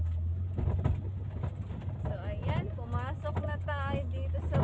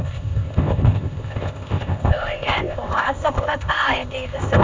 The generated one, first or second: second